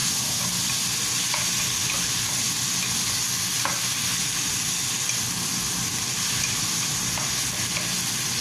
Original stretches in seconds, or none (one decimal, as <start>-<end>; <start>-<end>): 0.0-8.4